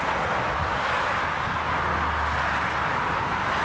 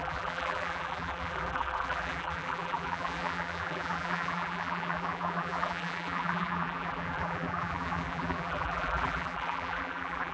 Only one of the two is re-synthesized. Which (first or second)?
second